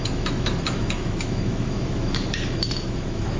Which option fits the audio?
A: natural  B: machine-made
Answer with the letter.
B